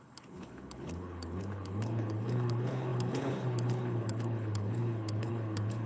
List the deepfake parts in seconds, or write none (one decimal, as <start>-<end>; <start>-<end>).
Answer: 0.0-5.9